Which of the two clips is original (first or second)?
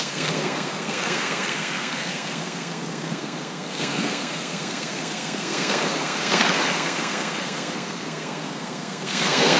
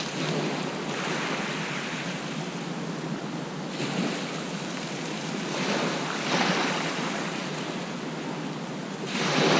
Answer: second